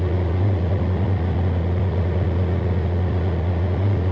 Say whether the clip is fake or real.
fake